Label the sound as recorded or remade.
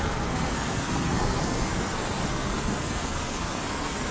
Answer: remade